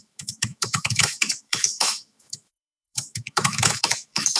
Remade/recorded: remade